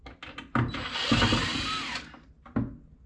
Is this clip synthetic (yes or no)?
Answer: no